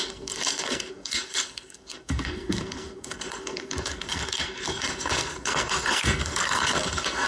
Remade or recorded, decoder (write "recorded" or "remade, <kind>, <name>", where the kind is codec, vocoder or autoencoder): remade, codec, SNAC